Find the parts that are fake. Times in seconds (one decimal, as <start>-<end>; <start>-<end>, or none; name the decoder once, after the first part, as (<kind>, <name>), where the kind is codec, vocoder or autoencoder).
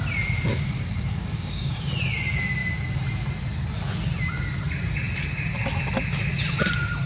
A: 0.5-1.9 (codec, DAC)